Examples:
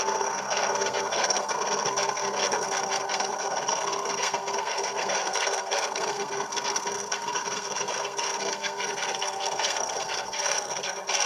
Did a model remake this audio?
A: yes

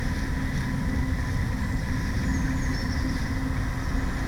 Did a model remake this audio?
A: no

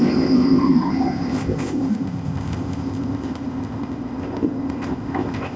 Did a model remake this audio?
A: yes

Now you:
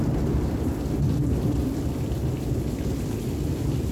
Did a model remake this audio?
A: no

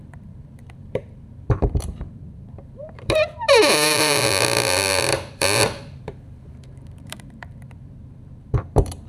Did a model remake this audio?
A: yes